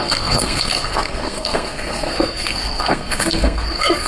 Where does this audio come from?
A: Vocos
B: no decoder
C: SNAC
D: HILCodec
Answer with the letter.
C